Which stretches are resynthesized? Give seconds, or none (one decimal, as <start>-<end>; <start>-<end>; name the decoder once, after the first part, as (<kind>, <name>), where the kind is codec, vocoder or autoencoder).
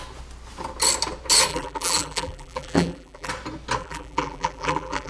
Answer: 1.5-3.3 (vocoder, BigVGAN v2); 3.8-5.1